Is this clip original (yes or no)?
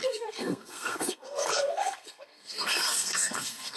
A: no